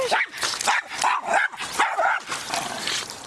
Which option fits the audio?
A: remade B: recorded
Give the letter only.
B